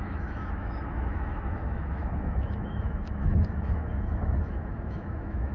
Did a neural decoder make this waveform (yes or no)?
yes